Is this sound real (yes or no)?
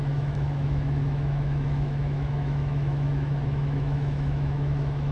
no